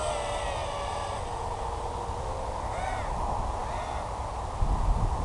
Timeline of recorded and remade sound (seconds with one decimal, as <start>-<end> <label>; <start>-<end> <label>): 0.0-0.6 recorded; 0.6-1.2 remade; 1.2-5.2 recorded